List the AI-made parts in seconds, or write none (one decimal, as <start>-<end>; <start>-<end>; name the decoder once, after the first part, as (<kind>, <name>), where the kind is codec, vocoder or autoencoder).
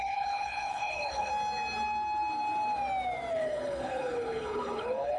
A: 0.0-1.3 (codec, HILCodec); 3.3-5.2